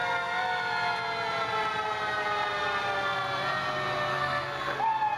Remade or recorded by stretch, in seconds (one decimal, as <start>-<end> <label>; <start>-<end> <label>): 0.0-4.1 recorded; 4.1-4.8 remade; 4.8-5.2 recorded